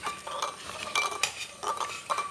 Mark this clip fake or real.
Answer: real